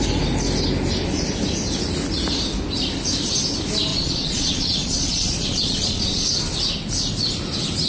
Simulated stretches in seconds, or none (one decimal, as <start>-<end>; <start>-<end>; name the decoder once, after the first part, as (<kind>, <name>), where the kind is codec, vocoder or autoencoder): 3.9-6.2 (vocoder, Vocos)